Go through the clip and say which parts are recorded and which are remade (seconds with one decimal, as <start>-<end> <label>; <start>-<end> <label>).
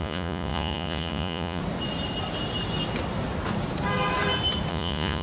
0.0-1.6 remade; 1.6-4.7 recorded; 4.7-5.2 remade